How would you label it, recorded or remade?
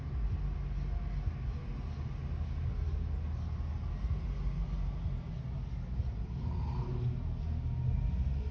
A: recorded